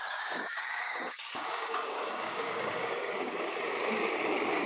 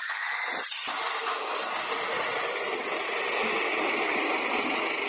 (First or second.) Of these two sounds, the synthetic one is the first